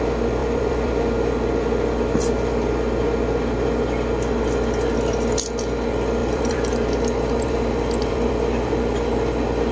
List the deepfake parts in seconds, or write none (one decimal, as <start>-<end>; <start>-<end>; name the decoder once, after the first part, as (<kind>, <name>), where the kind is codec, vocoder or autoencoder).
0.4-0.9 (vocoder, BigVGAN v2); 6.2-8.8